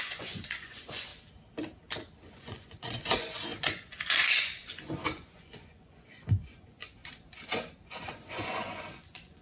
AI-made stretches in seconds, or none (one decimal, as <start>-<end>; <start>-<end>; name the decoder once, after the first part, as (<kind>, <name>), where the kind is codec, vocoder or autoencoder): 0.0-1.1 (vocoder, Vocos); 2.2-7.0; 7.9-9.4